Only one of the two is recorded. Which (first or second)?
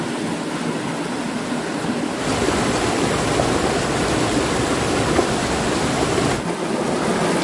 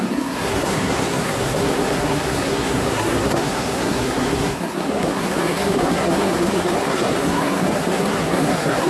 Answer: first